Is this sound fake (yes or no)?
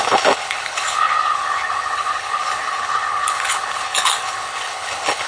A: yes